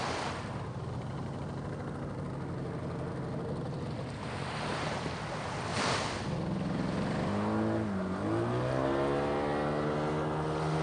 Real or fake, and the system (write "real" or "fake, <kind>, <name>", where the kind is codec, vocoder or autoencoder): real